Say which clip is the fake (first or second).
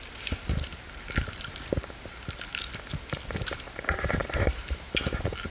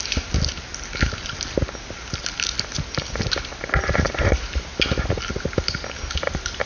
first